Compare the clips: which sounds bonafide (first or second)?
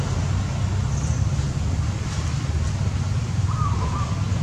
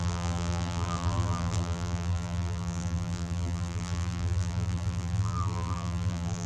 first